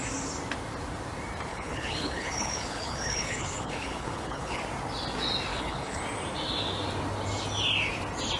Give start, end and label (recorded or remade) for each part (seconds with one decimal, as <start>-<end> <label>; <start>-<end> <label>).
0.0-1.5 recorded; 1.5-4.6 remade; 4.6-5.5 recorded; 5.5-6.0 remade; 6.0-8.4 recorded

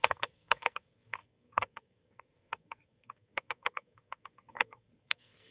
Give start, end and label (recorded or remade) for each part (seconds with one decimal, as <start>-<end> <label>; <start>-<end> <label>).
0.0-5.5 remade

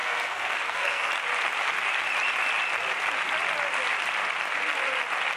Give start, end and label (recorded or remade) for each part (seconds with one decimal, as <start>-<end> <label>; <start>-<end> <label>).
0.0-1.1 remade; 1.1-5.4 recorded

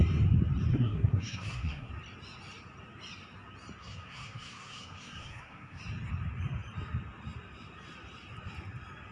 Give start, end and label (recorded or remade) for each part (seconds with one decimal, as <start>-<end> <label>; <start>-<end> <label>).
0.0-0.7 recorded; 0.7-1.9 remade; 1.9-3.8 recorded; 3.8-5.8 remade; 5.8-9.1 recorded

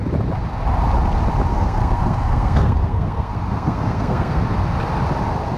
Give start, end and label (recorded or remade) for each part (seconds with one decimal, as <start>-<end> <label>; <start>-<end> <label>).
0.0-1.5 recorded; 1.5-4.4 remade; 4.4-5.6 recorded

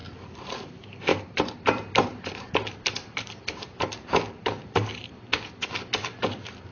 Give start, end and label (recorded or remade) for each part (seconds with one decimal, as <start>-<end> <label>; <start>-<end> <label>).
0.0-0.7 remade; 0.7-1.1 recorded; 1.1-5.1 remade; 5.1-6.7 recorded